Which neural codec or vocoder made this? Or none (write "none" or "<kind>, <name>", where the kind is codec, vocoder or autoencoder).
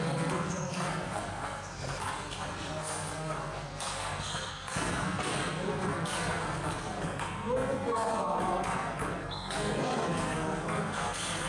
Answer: codec, SNAC